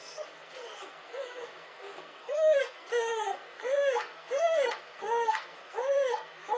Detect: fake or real fake